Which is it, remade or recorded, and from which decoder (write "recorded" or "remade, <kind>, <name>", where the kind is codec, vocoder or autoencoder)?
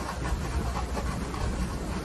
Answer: recorded